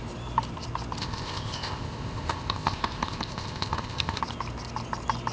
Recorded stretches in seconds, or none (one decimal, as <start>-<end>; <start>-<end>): 0.0-1.0; 4.2-5.3